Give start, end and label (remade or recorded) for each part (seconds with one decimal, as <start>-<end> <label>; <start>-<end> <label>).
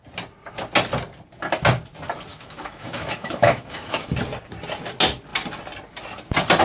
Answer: 0.0-2.3 recorded; 2.3-4.1 remade; 4.1-6.6 recorded